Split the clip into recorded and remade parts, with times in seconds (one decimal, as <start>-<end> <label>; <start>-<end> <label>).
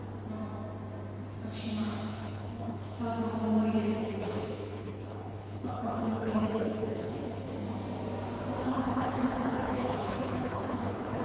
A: 0.0-2.1 recorded; 2.1-3.0 remade; 3.0-4.0 recorded; 4.0-7.5 remade; 7.5-8.6 recorded; 8.6-11.2 remade